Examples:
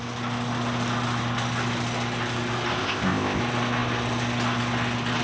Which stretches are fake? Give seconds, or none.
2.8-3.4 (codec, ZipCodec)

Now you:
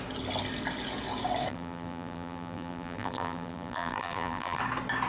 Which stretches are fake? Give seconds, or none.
1.5-4.6 (vocoder, BigVGAN v2)

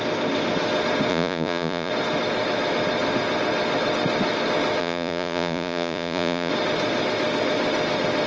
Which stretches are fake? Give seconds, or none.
1.1-1.9 (vocoder, Vocos); 4.8-6.5

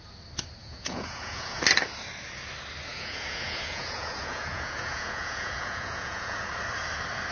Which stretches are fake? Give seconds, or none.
0.6-1.6 (vocoder, Vocos); 2.9-6.5

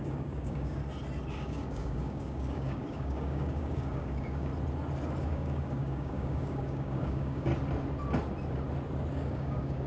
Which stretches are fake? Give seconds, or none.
0.0-0.8 (codec, DAC); 1.3-4.5; 5.2-7.5; 9.1-9.9

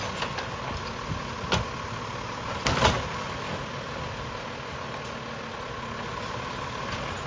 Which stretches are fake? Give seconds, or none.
none